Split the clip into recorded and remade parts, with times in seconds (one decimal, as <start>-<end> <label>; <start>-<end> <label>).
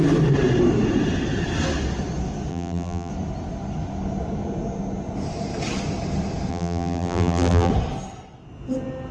0.0-2.5 recorded; 2.5-3.1 remade; 3.1-6.5 recorded; 6.5-7.7 remade; 7.7-9.1 recorded